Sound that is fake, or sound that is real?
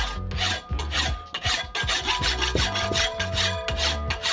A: real